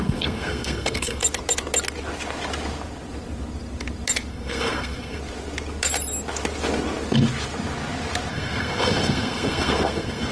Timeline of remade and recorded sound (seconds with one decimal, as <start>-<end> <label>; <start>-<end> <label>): 0.0-1.2 remade; 1.2-4.3 recorded; 4.3-5.2 remade; 5.2-8.3 recorded; 8.3-10.3 remade